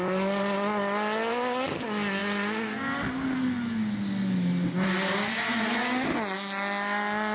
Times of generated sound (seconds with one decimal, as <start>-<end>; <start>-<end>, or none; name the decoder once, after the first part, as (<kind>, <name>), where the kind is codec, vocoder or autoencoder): none

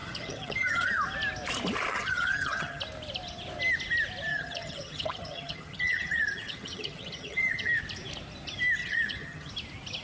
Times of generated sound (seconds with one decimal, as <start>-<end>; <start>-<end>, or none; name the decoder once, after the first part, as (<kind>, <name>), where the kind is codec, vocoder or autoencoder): 0.0-0.9 (vocoder, HiFi-GAN); 1.9-2.8; 4.3-7.8; 8.8-9.5

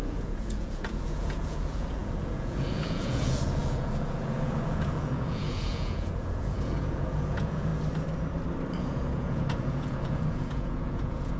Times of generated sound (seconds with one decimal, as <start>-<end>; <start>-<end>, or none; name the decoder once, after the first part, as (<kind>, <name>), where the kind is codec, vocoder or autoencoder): 0.0-7.7 (vocoder, Vocos); 8.8-11.4